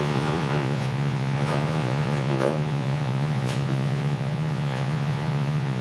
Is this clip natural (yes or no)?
no